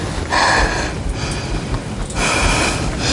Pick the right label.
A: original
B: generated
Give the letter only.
A